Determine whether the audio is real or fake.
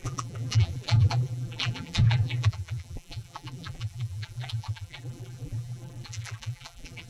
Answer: fake